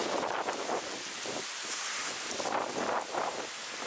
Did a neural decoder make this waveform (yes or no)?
no